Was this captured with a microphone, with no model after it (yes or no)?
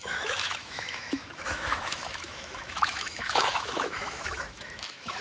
no